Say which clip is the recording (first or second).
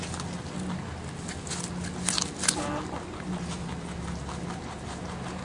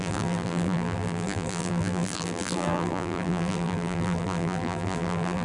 first